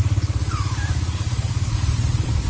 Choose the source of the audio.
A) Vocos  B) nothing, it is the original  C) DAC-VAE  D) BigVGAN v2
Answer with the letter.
B